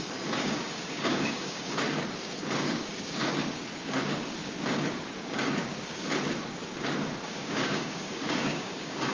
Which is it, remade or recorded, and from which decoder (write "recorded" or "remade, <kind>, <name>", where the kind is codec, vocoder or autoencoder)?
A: remade, codec, DAC